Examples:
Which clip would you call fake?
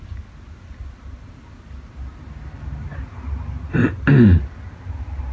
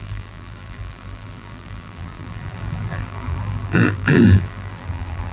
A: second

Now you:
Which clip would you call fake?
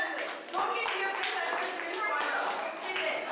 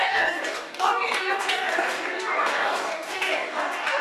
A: second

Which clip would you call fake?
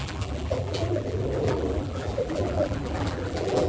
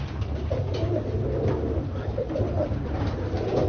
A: first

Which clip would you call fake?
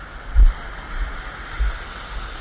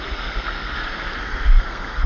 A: second